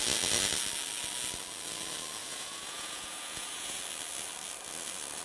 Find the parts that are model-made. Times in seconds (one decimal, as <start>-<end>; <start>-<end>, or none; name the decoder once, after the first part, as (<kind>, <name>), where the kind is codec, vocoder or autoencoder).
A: 2.2-3.8 (vocoder, Vocos)